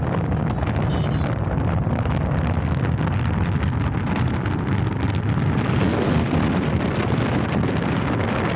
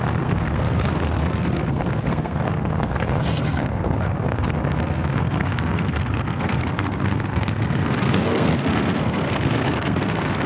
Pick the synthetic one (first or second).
second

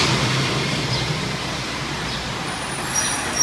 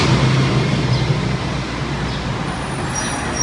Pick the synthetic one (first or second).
first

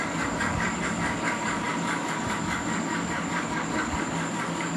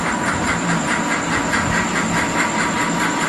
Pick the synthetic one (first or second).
first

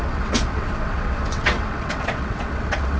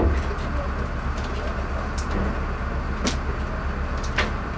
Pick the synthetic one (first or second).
first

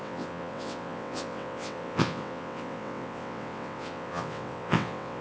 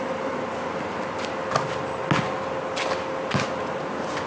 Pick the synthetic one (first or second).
first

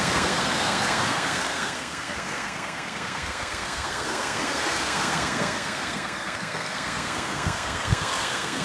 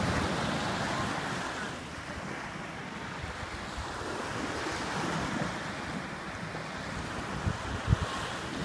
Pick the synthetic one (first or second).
first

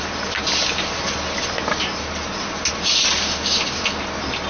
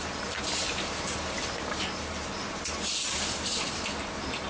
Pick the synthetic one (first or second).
second